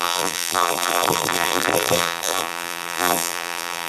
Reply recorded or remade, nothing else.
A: remade